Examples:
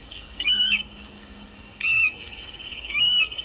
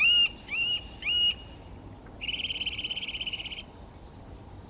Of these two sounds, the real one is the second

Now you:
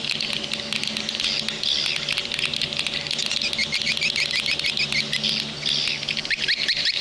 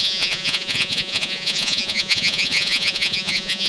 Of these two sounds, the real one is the first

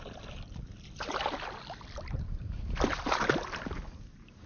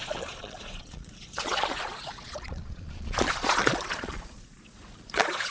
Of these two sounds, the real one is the first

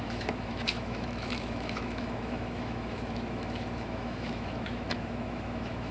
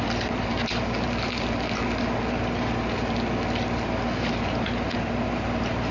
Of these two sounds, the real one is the second